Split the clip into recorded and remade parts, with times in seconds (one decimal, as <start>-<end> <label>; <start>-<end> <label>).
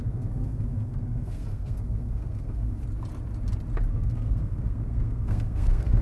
0.0-2.8 remade; 2.8-3.9 recorded; 3.9-6.0 remade